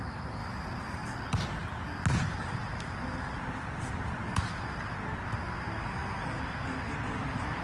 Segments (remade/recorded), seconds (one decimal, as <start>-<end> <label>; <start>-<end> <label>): 0.0-0.4 recorded; 0.4-1.9 remade; 1.9-7.6 recorded

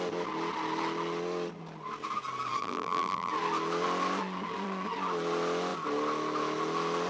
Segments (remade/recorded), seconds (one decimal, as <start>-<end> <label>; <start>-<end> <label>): 0.0-2.6 recorded; 2.6-3.3 remade; 3.3-7.1 recorded